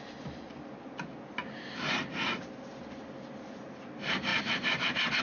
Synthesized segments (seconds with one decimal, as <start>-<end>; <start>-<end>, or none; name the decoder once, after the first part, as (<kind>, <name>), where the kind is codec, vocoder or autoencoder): 4.3-5.2 (vocoder, BigVGAN v2)